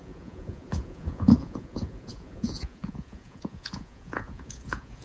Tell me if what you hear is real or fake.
fake